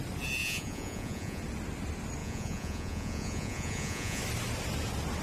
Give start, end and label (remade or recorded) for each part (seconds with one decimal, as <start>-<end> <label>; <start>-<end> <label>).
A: 0.0-0.4 recorded; 0.4-1.4 remade; 1.4-2.2 recorded; 2.2-4.2 remade; 4.2-5.2 recorded